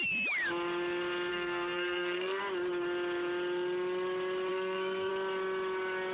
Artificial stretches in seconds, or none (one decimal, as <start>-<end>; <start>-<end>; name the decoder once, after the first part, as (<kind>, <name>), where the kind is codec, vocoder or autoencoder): 1.3-2.4 (codec, SNAC); 4.5-5.1